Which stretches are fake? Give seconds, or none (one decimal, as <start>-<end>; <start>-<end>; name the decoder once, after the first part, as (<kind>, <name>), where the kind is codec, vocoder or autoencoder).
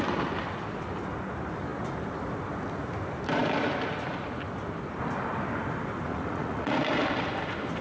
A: 6.1-6.8 (vocoder, Vocos)